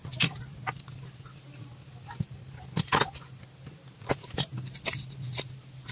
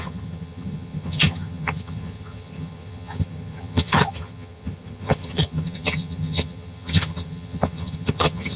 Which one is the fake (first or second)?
second